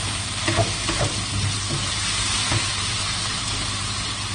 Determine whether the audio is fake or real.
real